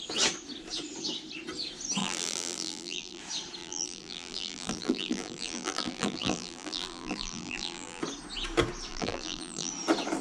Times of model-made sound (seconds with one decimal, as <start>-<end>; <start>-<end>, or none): 2.0-3.2; 3.6-8.0; 8.9-9.7